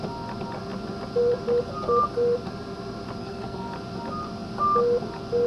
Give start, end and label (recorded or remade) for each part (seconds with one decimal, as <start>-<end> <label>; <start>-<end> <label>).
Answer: 0.0-3.2 recorded; 3.2-3.7 remade; 3.7-5.5 recorded